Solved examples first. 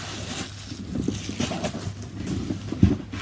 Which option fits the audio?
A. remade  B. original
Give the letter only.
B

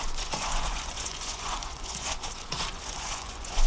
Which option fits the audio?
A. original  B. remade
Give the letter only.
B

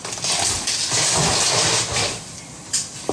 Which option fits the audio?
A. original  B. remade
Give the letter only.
A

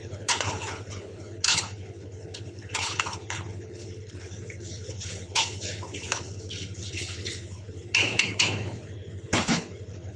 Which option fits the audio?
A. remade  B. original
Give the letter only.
A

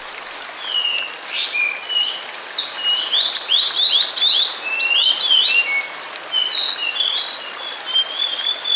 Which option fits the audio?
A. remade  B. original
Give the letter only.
B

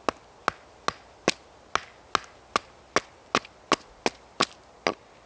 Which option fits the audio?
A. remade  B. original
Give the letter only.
B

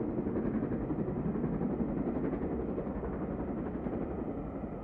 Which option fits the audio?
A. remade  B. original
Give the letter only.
B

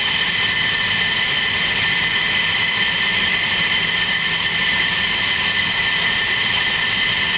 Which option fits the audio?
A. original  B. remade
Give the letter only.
A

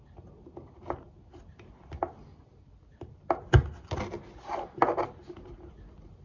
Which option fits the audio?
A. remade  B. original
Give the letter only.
B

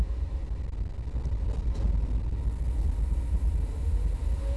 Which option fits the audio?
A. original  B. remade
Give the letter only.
A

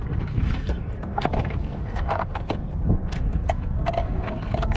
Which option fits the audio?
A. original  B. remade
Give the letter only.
B